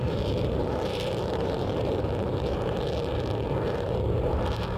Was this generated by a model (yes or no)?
yes